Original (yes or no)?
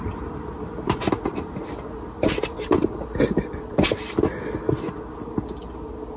yes